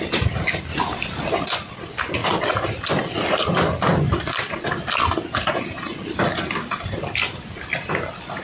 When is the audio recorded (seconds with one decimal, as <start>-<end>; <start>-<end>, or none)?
0.0-8.4